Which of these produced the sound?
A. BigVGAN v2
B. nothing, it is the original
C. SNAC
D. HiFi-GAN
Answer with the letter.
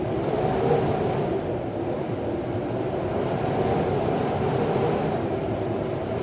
A